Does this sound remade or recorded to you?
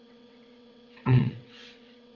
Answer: remade